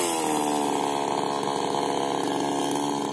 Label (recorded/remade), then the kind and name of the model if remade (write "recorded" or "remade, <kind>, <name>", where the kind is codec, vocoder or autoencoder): recorded